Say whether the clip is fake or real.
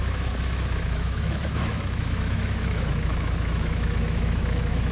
fake